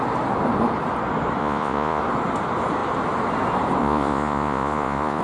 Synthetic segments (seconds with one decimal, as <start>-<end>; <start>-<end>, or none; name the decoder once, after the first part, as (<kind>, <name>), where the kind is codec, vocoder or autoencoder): 1.4-2.0 (vocoder, Vocos); 3.8-5.2